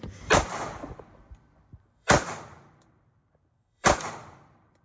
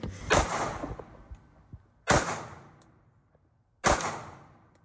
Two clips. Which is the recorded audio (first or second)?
second